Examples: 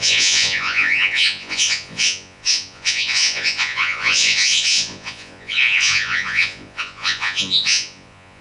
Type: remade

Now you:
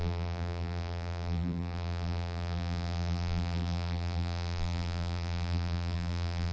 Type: remade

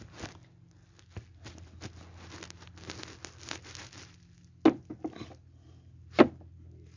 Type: recorded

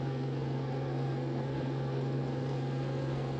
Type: remade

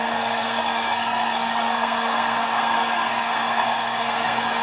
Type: remade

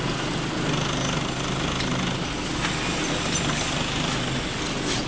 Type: recorded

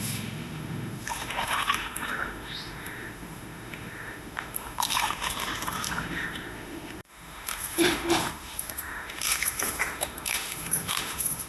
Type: remade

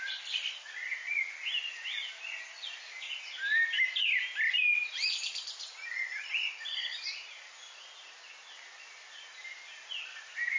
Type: recorded